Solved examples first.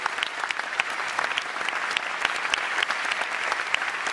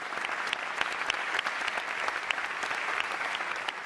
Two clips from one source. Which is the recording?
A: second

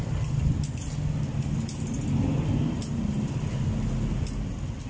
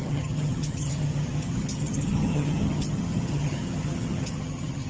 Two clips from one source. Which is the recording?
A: first